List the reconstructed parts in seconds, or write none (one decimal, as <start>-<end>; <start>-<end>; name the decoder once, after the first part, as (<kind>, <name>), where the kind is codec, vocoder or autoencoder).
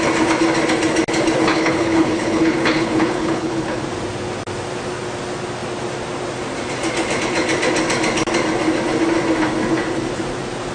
1.5-3.8 (codec, HILCodec)